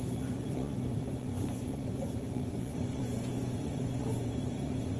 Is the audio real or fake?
fake